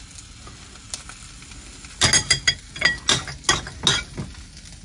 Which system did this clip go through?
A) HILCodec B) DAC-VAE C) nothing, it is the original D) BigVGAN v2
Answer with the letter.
C